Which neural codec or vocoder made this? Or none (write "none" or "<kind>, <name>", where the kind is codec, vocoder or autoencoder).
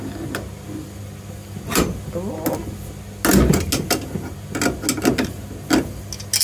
none